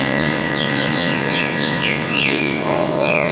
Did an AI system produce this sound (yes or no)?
yes